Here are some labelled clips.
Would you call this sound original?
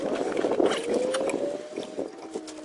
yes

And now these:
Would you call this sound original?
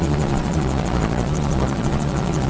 no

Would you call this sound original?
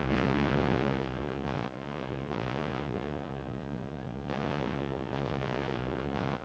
no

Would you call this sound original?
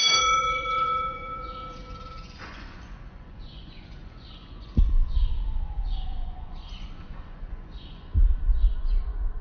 no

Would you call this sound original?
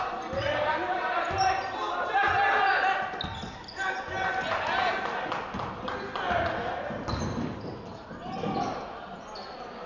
yes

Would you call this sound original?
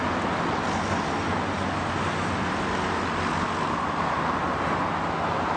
yes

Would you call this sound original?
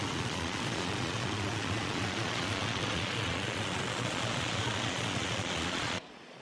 no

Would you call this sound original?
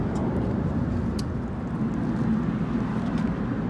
yes